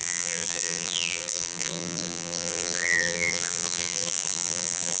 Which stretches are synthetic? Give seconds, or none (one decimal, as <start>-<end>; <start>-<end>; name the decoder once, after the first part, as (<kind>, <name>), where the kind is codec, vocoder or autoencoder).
0.0-5.0 (vocoder, BigVGAN v2)